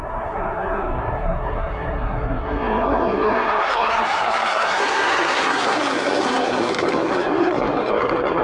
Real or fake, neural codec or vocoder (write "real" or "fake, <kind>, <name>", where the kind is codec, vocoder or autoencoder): fake, codec, SNAC